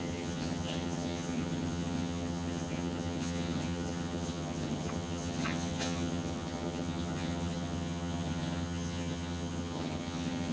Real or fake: fake